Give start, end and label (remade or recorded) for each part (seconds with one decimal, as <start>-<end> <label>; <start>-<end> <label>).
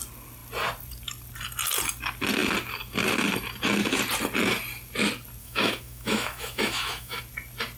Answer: 0.0-5.4 recorded; 5.4-7.2 remade; 7.2-7.8 recorded